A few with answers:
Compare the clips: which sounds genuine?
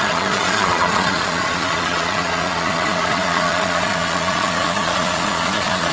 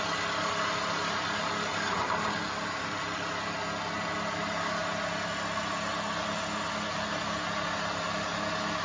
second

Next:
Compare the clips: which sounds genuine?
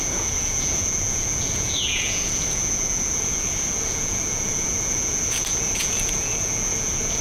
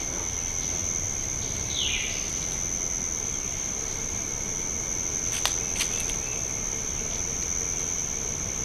second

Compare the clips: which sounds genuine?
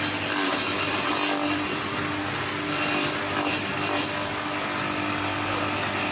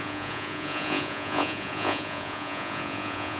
first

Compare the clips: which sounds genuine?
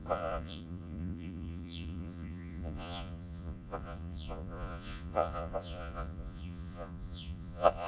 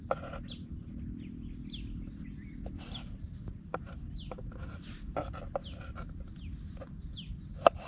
second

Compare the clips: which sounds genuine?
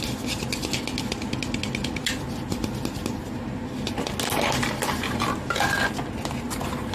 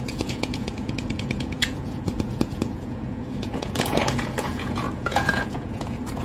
first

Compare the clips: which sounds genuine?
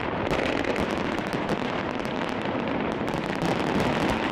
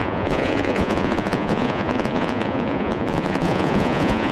first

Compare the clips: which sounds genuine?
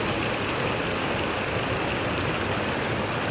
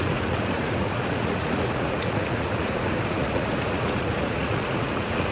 first